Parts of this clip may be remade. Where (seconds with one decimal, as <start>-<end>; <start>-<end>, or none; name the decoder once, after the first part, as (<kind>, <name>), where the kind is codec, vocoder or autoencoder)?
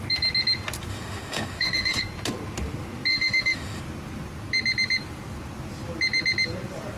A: 0.9-2.0 (autoencoder, DAC-VAE); 3.1-3.8